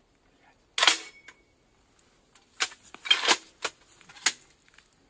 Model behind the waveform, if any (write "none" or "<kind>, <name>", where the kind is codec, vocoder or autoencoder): none